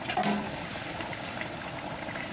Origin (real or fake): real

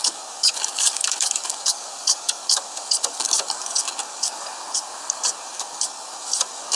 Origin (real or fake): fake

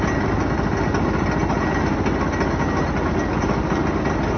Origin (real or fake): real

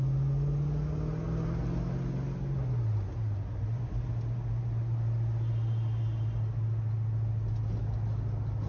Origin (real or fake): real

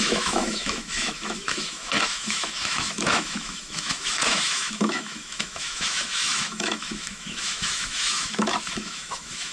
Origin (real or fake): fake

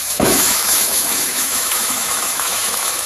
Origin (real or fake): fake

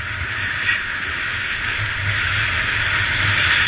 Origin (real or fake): real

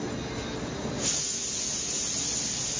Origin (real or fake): real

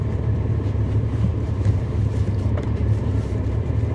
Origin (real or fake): fake